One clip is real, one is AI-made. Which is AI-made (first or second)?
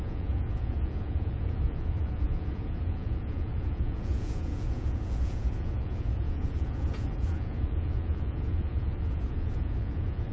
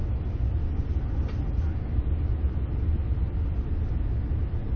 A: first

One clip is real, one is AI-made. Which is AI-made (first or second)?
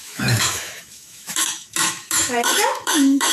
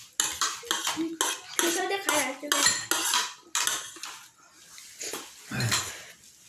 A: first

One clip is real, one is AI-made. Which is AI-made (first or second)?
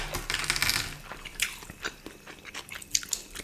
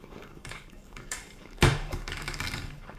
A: second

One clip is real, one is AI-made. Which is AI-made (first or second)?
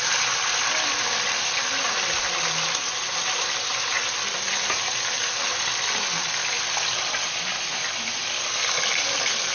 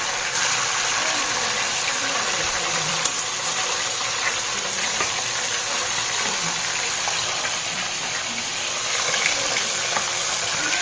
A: second